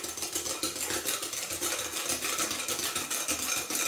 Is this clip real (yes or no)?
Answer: yes